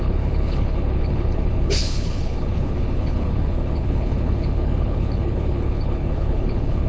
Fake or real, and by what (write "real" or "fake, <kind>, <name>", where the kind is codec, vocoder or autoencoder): fake, codec, HILCodec